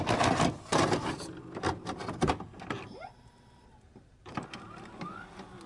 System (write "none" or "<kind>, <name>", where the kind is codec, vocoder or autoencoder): none